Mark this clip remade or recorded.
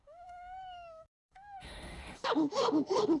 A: remade